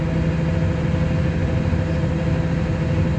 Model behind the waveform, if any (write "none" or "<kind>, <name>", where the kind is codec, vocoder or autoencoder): none